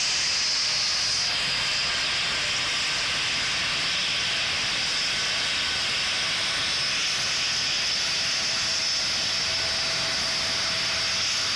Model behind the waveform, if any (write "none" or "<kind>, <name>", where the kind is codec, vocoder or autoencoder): none